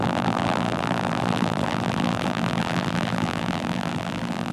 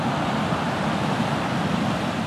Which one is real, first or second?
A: second